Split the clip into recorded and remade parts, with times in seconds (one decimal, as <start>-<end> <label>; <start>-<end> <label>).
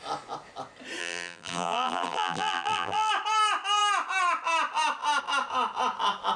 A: 0.0-1.0 recorded; 1.0-3.1 remade; 3.1-6.4 recorded